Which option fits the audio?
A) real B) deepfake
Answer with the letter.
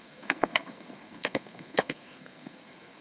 B